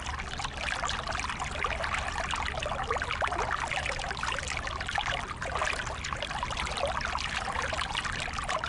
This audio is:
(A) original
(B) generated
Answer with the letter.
A